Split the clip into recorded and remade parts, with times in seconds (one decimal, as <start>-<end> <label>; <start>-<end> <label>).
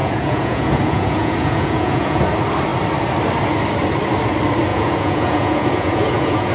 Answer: 0.0-2.2 remade; 2.2-4.7 recorded; 4.7-6.5 remade